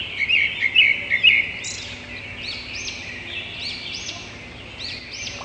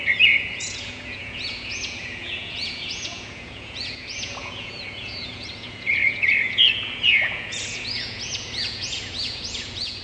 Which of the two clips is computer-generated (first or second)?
second